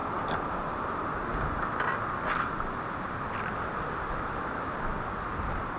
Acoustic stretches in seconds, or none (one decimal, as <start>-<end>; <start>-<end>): 0.0-5.8